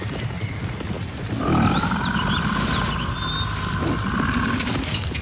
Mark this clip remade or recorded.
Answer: recorded